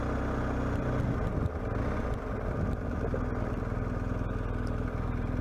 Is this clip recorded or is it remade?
recorded